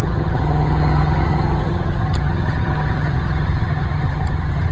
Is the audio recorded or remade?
remade